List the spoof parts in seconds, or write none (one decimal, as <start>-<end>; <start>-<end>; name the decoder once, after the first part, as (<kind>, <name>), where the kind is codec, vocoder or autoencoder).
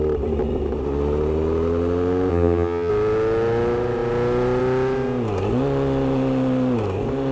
2.3-2.9 (vocoder, HiFi-GAN)